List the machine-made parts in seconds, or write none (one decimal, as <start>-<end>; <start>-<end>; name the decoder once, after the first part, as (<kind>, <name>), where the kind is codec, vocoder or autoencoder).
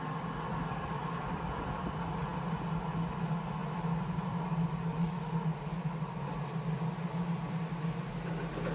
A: none